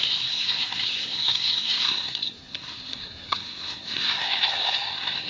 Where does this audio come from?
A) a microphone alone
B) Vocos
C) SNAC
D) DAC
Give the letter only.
C